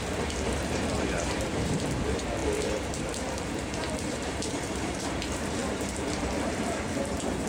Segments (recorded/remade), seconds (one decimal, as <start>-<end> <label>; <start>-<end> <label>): 0.0-7.5 remade

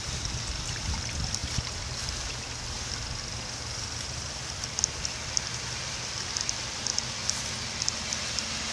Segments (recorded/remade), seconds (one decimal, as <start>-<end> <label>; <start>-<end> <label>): 0.0-8.7 recorded

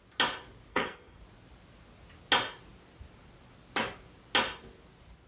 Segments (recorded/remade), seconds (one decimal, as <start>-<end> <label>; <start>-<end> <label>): 0.0-0.7 recorded; 0.7-1.2 remade; 1.2-5.3 recorded

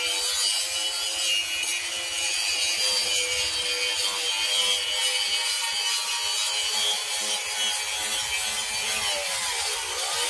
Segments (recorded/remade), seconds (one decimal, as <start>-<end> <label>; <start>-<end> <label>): 0.0-10.3 recorded